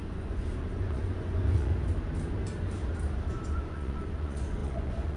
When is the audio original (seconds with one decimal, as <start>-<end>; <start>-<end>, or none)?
1.7-3.3